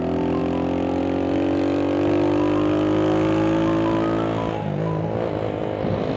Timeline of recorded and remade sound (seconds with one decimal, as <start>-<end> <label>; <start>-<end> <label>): 0.0-6.2 recorded